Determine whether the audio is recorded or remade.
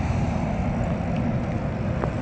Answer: recorded